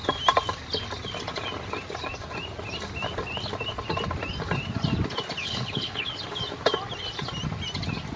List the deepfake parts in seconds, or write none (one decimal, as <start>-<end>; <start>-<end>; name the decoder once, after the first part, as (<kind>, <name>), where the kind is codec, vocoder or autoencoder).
5.4-6.1 (codec, HILCodec)